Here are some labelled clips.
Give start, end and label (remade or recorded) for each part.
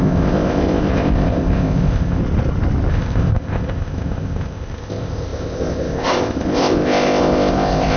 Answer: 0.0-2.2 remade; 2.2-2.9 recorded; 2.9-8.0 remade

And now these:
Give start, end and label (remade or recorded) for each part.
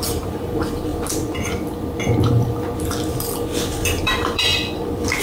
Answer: 0.0-0.9 remade; 0.9-4.0 recorded; 4.0-4.5 remade; 4.5-5.2 recorded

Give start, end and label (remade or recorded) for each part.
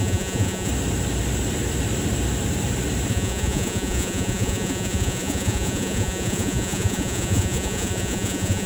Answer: 0.0-0.7 remade; 0.7-3.1 recorded; 3.1-8.7 remade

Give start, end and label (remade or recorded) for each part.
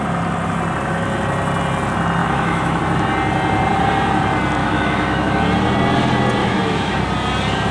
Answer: 0.0-2.2 recorded; 2.2-2.8 remade; 2.8-4.6 recorded; 4.6-5.4 remade; 5.4-6.4 recorded; 6.4-7.0 remade; 7.0-7.7 recorded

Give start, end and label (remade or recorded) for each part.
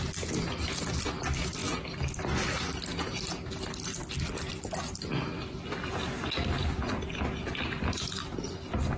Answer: 0.0-9.0 recorded